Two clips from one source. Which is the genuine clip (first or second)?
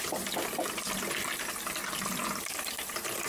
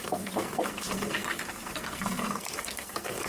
first